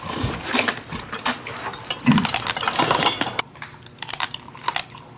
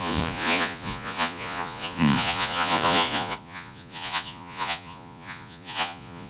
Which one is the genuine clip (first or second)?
first